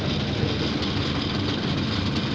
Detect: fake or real real